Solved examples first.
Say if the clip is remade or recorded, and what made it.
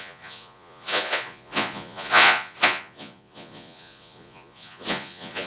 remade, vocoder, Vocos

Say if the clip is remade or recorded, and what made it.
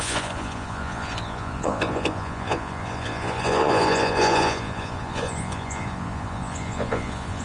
remade, vocoder, Vocos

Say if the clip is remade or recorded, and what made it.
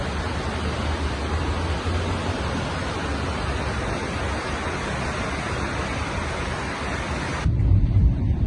recorded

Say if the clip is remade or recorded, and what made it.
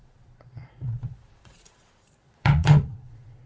remade, vocoder, Vocos